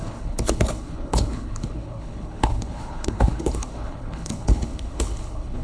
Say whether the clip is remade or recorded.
remade